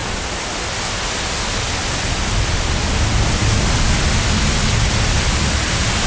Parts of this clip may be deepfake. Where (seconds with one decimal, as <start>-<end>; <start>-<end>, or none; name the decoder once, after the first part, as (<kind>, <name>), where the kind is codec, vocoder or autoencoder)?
none